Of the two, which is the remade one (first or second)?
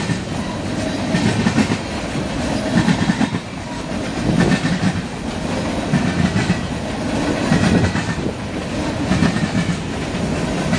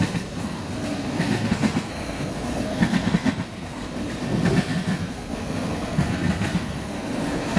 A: second